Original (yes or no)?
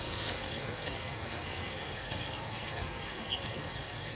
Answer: no